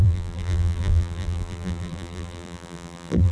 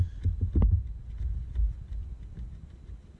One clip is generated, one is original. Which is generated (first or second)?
first